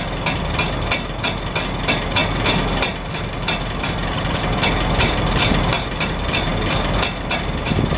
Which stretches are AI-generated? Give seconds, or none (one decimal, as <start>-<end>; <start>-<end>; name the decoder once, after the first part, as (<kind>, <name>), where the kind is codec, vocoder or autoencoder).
none

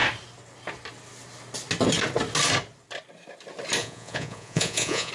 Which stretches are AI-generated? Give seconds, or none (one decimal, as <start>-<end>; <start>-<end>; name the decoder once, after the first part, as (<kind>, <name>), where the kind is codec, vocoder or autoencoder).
3.8-5.1 (vocoder, Vocos)

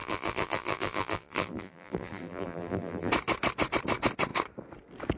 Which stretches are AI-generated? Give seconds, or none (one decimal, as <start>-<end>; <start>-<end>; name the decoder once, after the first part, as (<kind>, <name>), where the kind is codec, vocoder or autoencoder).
0.0-3.1 (vocoder, BigVGAN v2)

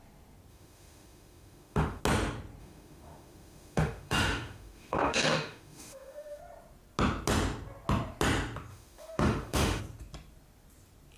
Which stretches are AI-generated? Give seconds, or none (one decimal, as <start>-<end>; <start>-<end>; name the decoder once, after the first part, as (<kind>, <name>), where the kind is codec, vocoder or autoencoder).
0.5-2.0 (autoencoder, DAC-VAE); 2.6-6.4; 8.7-9.8

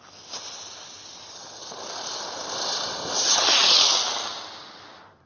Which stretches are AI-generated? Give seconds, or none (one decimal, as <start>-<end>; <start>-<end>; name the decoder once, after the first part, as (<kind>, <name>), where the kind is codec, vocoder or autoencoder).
none

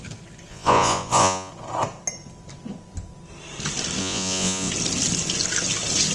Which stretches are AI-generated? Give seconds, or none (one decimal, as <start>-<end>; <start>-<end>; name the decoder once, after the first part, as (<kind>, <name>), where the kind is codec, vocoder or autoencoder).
0.5-1.5 (vocoder, Vocos); 4.0-4.7